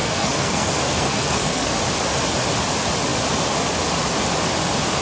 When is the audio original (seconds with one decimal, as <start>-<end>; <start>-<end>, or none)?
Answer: 1.8-5.0